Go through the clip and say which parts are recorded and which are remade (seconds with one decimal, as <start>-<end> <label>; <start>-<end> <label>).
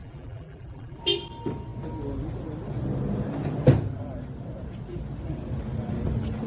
0.0-1.0 remade; 1.0-6.5 recorded